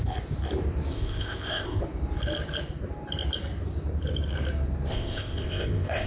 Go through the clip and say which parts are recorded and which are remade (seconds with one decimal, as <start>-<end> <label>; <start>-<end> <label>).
0.0-0.9 recorded; 0.9-1.8 remade; 1.8-4.9 recorded; 4.9-6.1 remade